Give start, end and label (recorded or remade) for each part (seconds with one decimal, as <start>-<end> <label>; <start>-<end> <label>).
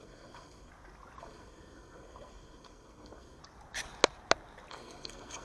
0.0-0.7 remade; 0.7-1.2 recorded; 1.2-3.4 remade; 3.4-4.7 recorded; 4.7-5.4 remade